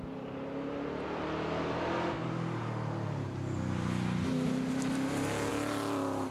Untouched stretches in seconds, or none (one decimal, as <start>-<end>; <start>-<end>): 0.0-6.3

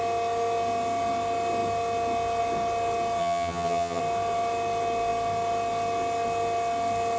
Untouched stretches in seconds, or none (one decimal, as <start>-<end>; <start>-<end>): 0.0-3.2; 4.0-7.2

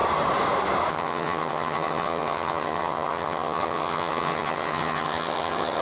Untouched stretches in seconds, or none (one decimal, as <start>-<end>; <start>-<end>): 0.0-0.9

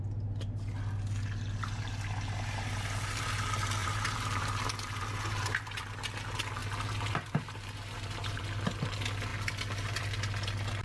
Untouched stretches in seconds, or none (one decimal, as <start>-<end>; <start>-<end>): 0.0-3.8; 5.8-6.6; 8.4-10.8